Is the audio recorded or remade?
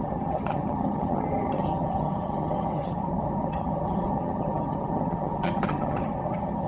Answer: remade